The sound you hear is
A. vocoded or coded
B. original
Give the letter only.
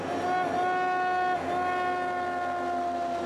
B